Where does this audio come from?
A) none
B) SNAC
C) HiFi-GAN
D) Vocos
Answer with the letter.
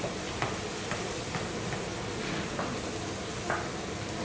A